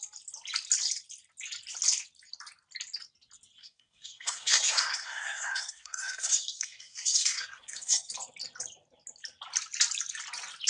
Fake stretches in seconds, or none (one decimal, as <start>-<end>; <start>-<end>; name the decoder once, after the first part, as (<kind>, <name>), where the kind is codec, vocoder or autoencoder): 3.6-8.1 (codec, SNAC)